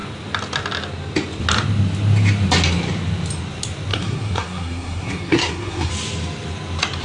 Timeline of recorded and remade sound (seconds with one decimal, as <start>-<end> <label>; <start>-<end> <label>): 0.0-3.9 recorded; 3.9-5.9 remade; 5.9-7.0 recorded

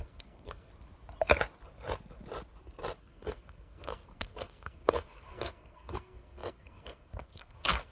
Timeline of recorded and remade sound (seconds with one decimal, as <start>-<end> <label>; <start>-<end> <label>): 0.0-0.7 remade; 0.7-3.0 recorded; 3.0-7.9 remade